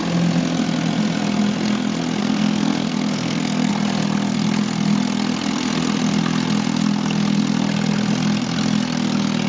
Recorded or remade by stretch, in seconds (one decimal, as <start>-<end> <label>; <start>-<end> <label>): 0.0-2.2 recorded; 2.2-3.7 remade; 3.7-9.5 recorded